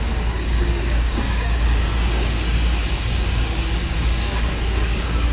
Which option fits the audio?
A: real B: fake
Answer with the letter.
B